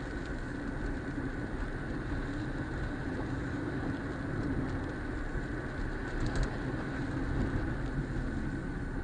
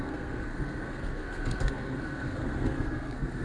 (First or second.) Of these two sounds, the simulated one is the second